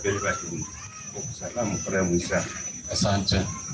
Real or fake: real